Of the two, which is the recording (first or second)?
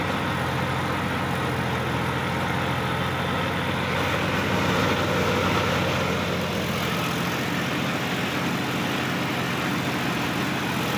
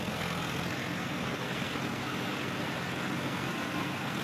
first